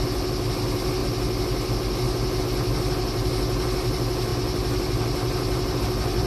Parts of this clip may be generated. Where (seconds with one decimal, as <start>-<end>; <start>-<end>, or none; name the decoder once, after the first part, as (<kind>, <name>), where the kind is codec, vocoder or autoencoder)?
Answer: none